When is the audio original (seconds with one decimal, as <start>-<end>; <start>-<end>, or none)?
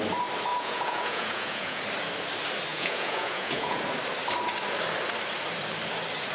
0.0-0.5; 1.8-2.7; 3.8-6.3